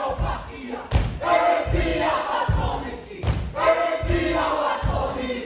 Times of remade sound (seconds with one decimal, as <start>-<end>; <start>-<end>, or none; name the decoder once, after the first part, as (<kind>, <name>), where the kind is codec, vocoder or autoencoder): none